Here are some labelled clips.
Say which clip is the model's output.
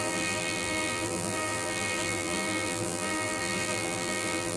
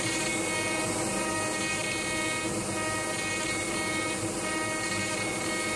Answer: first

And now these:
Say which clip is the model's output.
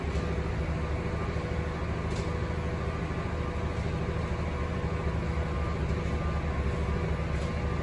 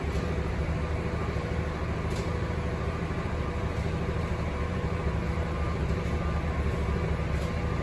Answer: second